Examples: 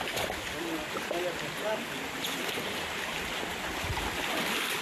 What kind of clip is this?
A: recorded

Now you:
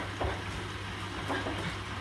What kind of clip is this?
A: recorded